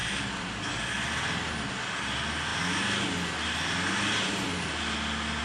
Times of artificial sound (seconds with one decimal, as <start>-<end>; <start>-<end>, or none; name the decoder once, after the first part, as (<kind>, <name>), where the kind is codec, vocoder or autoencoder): none